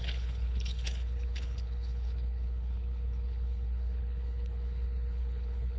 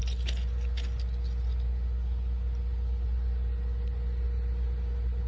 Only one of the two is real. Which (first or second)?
second